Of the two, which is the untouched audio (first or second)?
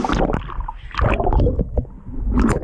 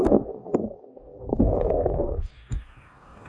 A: first